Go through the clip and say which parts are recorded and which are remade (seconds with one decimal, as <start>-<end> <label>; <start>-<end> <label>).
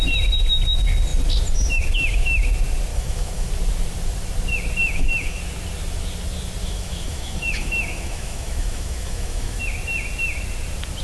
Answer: 0.0-2.9 recorded; 2.9-3.5 remade; 3.5-4.8 recorded; 4.8-5.4 remade; 5.4-6.6 recorded; 6.6-9.6 remade; 9.6-11.0 recorded